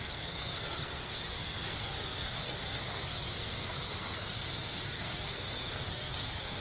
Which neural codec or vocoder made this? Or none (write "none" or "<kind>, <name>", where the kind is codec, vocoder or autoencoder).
codec, SNAC